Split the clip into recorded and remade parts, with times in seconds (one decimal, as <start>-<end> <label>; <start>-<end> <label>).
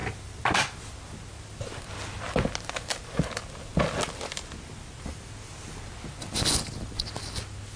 0.0-7.8 recorded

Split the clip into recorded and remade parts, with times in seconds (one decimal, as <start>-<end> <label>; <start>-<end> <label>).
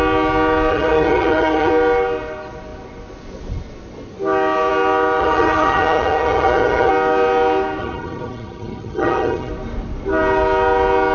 0.0-0.7 recorded; 0.7-1.7 remade; 1.7-5.2 recorded; 5.2-6.9 remade; 6.9-7.8 recorded; 7.8-9.5 remade; 9.5-11.1 recorded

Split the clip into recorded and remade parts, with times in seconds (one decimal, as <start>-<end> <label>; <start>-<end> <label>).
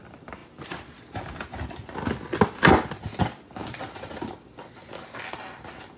0.0-6.0 recorded